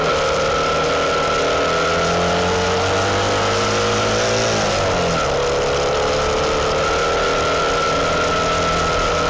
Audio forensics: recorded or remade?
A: recorded